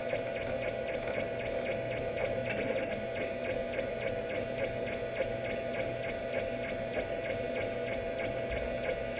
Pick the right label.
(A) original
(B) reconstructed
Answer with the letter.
A